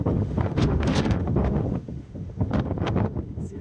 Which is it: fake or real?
fake